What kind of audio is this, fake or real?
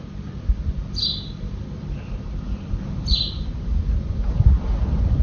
fake